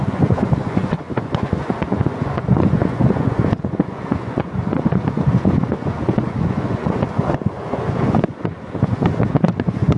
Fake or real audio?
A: fake